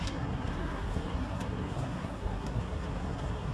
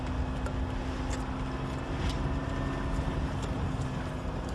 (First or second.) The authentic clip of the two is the second